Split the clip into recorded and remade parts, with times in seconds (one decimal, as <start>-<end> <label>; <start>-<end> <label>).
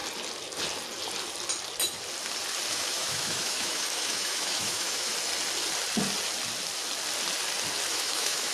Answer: 0.0-2.7 recorded; 2.7-5.1 remade; 5.1-7.9 recorded; 7.9-8.5 remade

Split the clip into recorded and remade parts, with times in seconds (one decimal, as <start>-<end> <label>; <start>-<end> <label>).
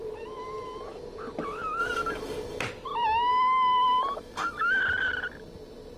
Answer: 0.0-1.8 recorded; 1.8-2.6 remade; 2.6-3.3 recorded; 3.3-4.8 remade; 4.8-6.0 recorded